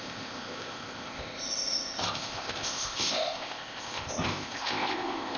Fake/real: fake